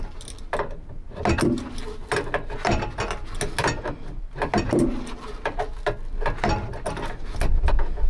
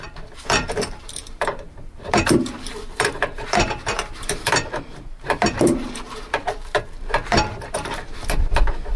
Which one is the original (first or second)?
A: first